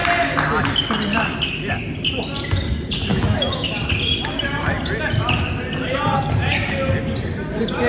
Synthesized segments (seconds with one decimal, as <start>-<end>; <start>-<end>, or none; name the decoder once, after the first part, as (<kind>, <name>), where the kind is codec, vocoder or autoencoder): 3.1-3.7 (autoencoder, DAC-VAE)